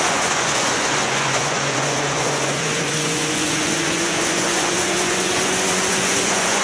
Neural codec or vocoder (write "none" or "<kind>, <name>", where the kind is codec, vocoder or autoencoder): vocoder, Vocos